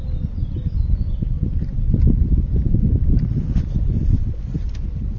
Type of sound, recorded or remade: recorded